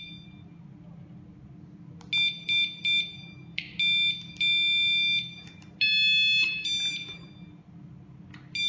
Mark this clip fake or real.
real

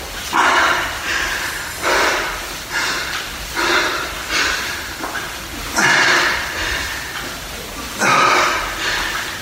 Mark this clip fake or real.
real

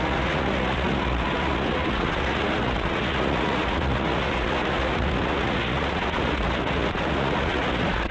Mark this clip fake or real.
fake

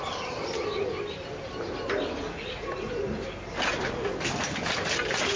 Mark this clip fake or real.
real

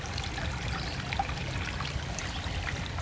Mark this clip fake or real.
real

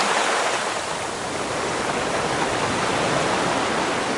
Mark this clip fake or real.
real